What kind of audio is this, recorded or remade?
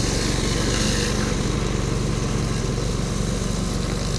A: recorded